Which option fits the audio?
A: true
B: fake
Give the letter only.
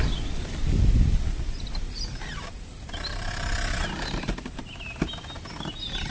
A